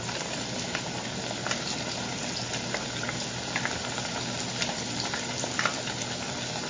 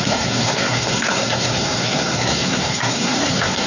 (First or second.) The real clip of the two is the first